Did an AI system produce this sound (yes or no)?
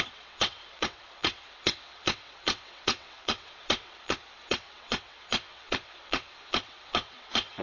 yes